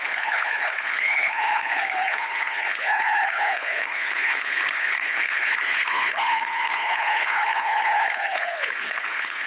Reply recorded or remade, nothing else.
remade